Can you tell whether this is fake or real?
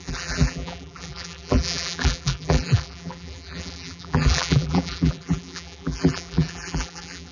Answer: fake